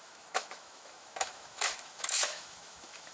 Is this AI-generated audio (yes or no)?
yes